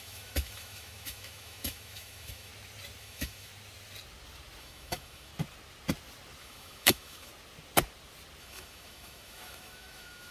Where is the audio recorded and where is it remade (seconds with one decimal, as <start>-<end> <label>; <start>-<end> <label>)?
0.0-2.5 remade; 2.5-3.0 recorded; 3.0-3.5 remade; 3.5-4.6 recorded; 4.6-5.3 remade; 5.3-6.4 recorded; 6.4-7.3 remade; 7.3-8.4 recorded; 8.4-10.3 remade